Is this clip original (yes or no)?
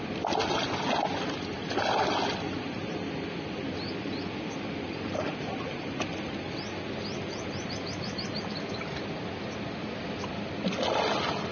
yes